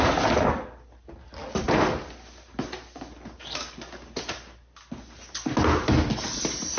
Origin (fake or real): real